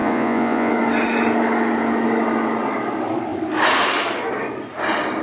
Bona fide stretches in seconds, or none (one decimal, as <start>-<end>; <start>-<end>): 0.7-5.2